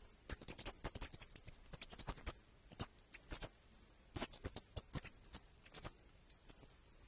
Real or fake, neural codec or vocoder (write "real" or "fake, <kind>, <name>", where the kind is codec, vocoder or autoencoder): real